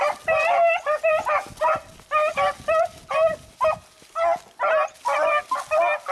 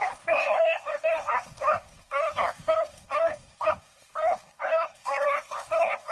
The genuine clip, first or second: first